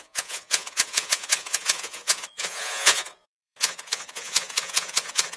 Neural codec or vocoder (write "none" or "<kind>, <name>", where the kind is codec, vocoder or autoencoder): vocoder, Vocos